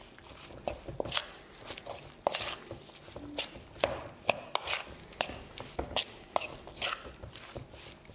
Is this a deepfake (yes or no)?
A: no